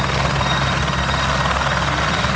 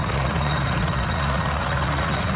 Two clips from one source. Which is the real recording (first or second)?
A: first